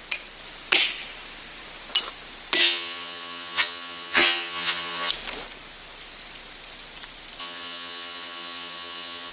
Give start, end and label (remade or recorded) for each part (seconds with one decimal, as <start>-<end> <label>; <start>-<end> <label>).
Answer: 0.0-2.6 recorded; 2.6-5.1 remade; 5.1-7.4 recorded; 7.4-9.3 remade